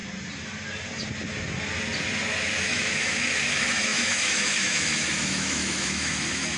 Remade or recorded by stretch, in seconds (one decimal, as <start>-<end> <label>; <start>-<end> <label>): 0.0-2.6 recorded; 2.6-6.6 remade